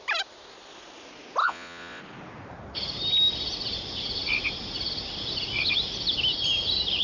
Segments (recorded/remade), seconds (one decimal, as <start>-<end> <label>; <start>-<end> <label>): 0.0-1.4 recorded; 1.4-2.0 remade; 2.0-7.0 recorded